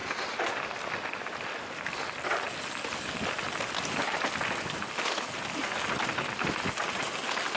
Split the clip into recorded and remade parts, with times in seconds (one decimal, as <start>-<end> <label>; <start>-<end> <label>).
0.0-7.6 recorded